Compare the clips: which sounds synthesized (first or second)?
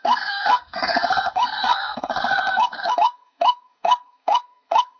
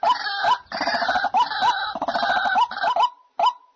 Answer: first